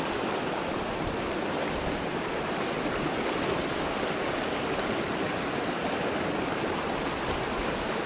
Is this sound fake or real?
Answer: real